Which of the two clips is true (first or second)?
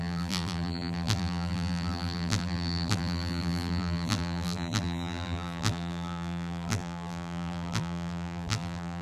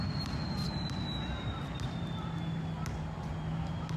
second